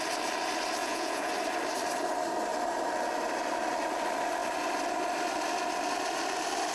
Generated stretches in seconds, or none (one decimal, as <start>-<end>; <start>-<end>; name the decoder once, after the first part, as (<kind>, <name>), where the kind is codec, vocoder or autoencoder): 0.8-1.3 (vocoder, Vocos)